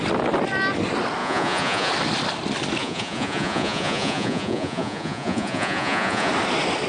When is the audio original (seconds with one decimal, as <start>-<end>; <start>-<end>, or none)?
0.0-1.2; 1.9-2.8; 6.3-6.9